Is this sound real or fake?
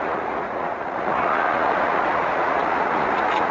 fake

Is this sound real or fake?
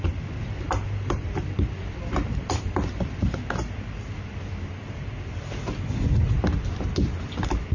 real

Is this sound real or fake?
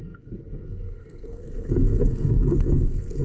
fake